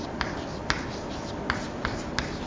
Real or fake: real